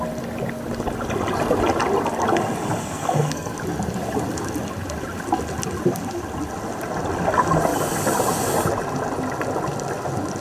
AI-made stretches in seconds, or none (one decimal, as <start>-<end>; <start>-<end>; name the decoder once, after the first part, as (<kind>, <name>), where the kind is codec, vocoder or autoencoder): 2.8-3.5 (codec, SNAC)